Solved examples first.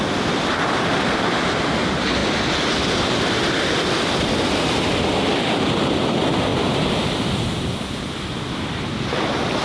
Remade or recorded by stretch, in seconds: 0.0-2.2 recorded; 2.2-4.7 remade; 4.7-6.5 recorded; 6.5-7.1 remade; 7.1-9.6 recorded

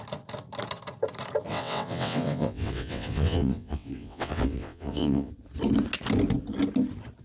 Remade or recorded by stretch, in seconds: 0.0-1.5 recorded; 1.5-5.3 remade; 5.3-7.2 recorded

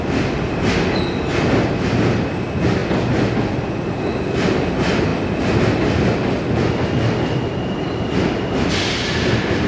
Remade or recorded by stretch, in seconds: 0.0-9.7 recorded